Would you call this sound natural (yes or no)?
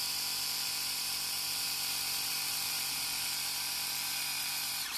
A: no